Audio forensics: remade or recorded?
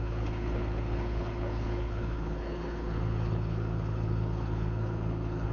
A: remade